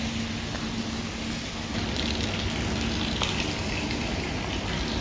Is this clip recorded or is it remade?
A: recorded